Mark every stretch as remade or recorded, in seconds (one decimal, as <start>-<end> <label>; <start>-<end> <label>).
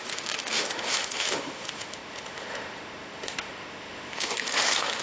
0.0-5.0 remade